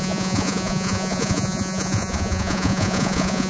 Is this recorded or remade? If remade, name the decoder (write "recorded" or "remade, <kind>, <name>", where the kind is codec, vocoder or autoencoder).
remade, vocoder, Vocos